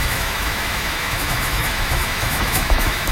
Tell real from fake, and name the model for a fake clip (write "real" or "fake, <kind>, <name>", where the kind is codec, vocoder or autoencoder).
fake, autoencoder, DAC-VAE